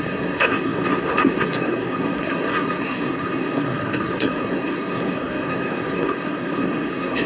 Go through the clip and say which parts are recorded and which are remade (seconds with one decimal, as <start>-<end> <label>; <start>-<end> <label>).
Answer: 0.0-7.3 remade